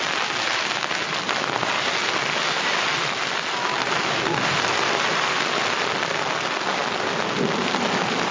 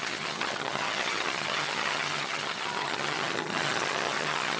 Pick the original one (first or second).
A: first